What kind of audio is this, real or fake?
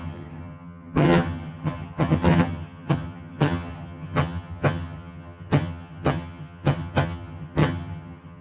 fake